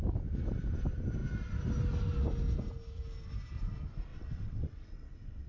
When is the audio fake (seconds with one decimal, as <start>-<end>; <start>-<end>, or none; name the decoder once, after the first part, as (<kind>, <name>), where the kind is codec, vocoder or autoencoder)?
4.1-5.5 (vocoder, WaveNeXt)